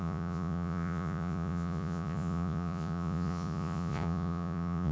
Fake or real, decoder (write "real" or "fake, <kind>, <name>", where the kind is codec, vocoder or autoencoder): fake, vocoder, Vocos